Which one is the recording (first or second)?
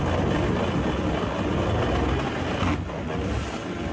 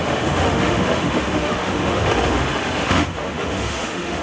first